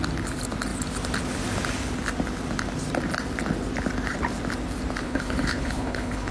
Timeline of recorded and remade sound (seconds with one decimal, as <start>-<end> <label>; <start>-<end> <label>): 0.0-5.0 recorded; 5.0-6.3 remade